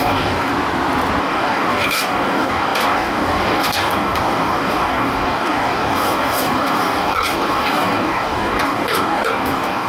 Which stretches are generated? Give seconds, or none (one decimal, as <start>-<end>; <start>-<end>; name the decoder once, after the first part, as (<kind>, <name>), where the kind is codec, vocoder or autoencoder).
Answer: 0.0-0.5 (codec, DAC); 1.2-9.9

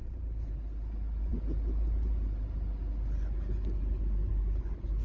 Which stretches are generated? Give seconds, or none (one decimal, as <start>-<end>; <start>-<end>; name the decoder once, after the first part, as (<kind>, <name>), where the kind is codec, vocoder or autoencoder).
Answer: none

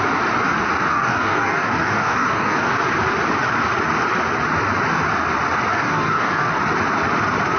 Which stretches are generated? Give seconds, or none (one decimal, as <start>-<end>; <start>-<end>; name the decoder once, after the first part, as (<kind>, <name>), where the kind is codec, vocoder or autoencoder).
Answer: 0.9-2.7 (codec, DAC); 5.7-6.6

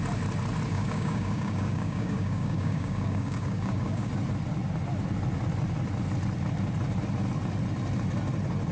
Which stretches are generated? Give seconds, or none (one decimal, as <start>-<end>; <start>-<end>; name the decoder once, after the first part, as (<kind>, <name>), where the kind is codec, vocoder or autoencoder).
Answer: 0.7-4.1 (codec, DAC)